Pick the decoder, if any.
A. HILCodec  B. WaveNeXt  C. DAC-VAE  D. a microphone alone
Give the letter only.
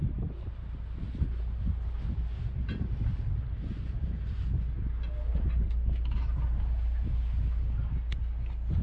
D